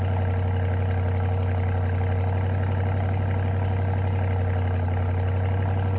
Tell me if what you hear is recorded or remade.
recorded